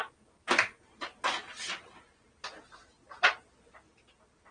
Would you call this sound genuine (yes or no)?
yes